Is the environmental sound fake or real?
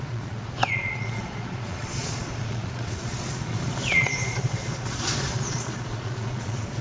fake